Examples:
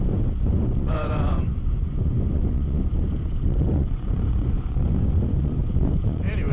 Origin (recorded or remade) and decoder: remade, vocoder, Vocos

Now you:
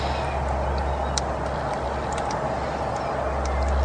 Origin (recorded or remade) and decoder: recorded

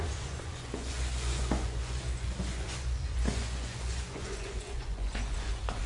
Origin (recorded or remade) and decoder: remade, vocoder, Vocos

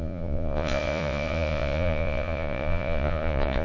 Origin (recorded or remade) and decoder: remade, vocoder, Vocos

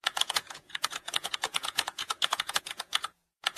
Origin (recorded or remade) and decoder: remade, vocoder, Vocos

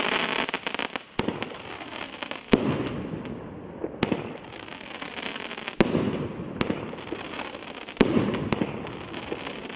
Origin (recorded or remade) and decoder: recorded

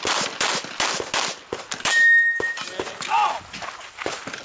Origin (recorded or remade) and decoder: recorded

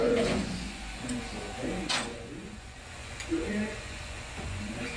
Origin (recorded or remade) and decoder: remade, vocoder, Vocos